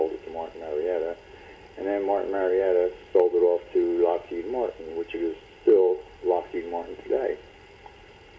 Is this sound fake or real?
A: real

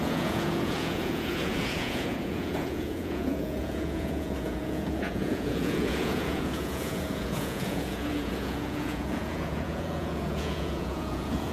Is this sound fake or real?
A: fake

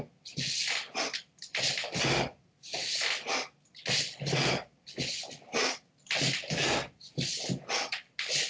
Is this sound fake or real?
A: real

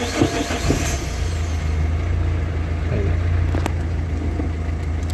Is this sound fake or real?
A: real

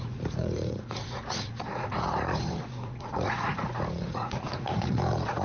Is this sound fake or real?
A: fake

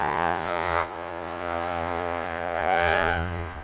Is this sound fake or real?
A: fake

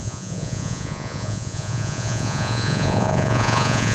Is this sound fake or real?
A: fake